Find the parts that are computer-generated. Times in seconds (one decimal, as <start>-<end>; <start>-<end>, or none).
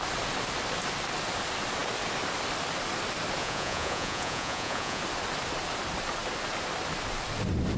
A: 3.4-5.0